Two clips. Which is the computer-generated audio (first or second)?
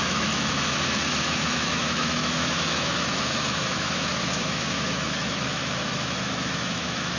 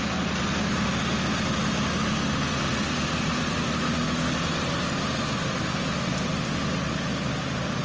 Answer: first